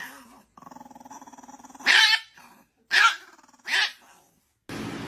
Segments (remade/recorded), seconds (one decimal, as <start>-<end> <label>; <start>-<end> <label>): 0.0-5.1 recorded